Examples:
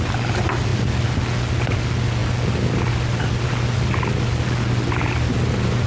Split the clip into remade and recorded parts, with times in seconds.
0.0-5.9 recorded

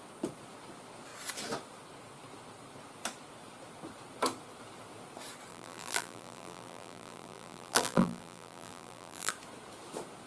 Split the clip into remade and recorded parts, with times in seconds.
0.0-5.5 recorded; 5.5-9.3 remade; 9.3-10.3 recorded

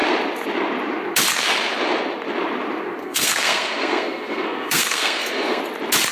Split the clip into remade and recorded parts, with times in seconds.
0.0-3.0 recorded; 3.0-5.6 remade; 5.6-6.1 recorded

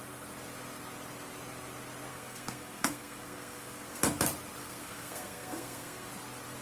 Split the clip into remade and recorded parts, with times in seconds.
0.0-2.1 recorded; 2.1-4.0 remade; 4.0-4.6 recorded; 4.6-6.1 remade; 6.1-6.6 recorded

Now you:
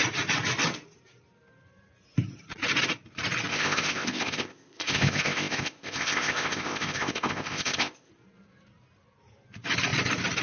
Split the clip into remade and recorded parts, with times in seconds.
0.0-3.5 recorded; 3.5-8.1 remade; 8.1-10.4 recorded

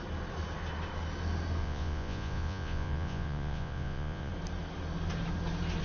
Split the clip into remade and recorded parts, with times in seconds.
0.0-1.6 recorded; 1.6-4.3 remade; 4.3-5.8 recorded